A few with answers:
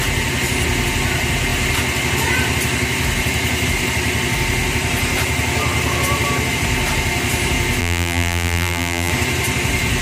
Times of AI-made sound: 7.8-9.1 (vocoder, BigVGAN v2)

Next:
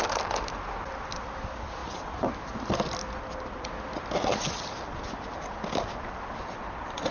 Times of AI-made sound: none